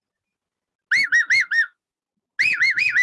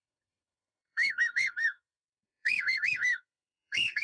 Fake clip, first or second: second